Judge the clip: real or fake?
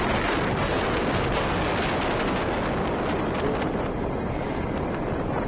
real